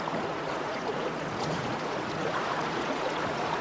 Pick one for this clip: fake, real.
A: fake